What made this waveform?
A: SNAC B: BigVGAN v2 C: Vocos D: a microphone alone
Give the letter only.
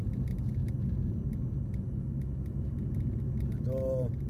D